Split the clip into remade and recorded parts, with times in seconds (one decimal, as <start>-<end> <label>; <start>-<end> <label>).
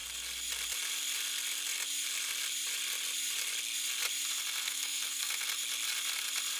0.0-4.6 recorded; 4.6-5.3 remade; 5.3-6.6 recorded